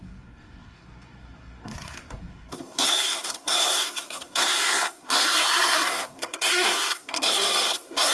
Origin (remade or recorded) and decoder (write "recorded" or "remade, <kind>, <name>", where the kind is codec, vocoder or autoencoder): remade, codec, SNAC